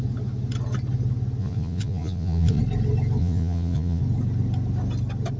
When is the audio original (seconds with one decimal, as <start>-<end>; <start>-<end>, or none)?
0.0-1.4; 2.6-3.2; 4.0-5.4